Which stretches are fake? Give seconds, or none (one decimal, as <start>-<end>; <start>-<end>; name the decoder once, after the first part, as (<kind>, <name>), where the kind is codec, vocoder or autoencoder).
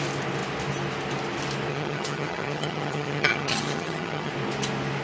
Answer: 1.7-4.3 (vocoder, HiFi-GAN)